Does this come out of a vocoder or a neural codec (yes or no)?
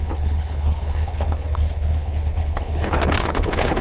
yes